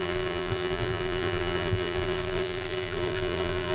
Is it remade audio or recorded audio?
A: remade